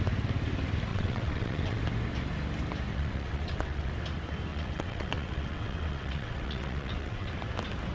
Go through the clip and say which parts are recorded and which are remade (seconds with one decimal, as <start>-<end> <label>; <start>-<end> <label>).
0.0-0.9 recorded; 0.9-1.8 remade; 1.8-2.9 recorded; 2.9-3.9 remade; 3.9-4.5 recorded; 4.5-7.3 remade; 7.3-7.9 recorded